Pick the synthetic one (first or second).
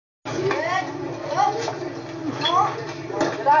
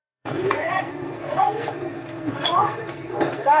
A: second